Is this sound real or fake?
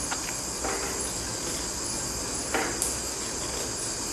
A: real